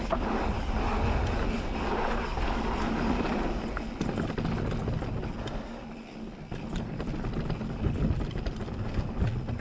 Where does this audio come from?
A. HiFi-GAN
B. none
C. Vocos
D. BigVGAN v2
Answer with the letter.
B